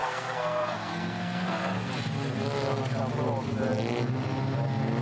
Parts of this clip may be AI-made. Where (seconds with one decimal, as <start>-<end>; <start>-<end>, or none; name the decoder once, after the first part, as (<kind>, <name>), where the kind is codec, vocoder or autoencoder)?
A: 0.0-1.9 (codec, SNAC)